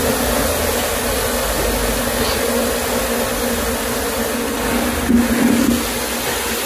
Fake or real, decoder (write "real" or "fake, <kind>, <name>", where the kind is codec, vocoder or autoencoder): real